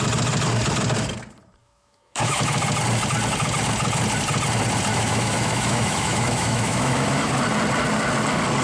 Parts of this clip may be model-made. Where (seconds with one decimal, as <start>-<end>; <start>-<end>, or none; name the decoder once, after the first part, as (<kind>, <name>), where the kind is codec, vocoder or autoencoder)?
1.6-2.6 (autoencoder, DAC-VAE); 4.9-7.3